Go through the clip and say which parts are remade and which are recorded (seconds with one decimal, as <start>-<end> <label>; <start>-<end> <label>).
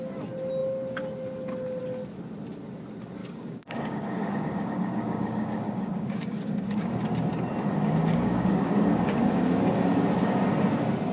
0.0-3.2 recorded; 3.2-6.9 remade; 6.9-8.0 recorded; 8.0-9.7 remade; 9.7-11.1 recorded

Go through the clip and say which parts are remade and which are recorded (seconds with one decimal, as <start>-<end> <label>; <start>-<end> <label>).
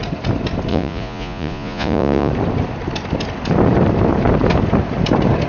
0.0-0.7 recorded; 0.7-2.3 remade; 2.3-5.5 recorded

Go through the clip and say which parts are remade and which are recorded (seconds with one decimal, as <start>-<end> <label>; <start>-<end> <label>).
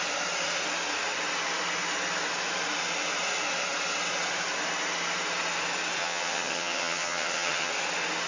0.0-6.0 recorded; 6.0-7.7 remade; 7.7-8.3 recorded